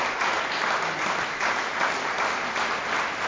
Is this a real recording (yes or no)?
yes